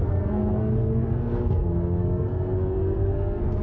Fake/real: fake